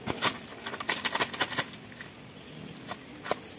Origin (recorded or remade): recorded